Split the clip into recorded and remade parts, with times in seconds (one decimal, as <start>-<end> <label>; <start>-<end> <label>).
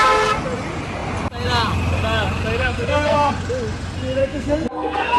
0.0-2.6 recorded; 2.6-3.3 remade; 3.3-4.2 recorded; 4.2-5.2 remade